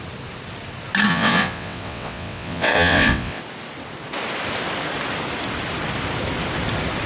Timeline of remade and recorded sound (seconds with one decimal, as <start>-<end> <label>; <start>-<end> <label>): 0.0-1.1 recorded; 1.1-3.4 remade; 3.4-7.1 recorded